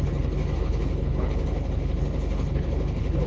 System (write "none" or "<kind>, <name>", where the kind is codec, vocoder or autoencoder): codec, HILCodec